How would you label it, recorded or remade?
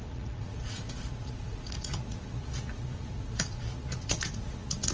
remade